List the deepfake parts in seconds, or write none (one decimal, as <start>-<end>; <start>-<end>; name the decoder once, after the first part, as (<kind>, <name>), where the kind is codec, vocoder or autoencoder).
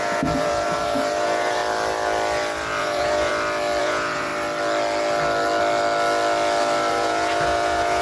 0.0-1.6 (vocoder, Vocos); 2.8-3.3; 3.8-4.3; 6.9-8.0